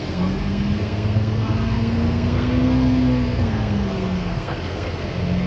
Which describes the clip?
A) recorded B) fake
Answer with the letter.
B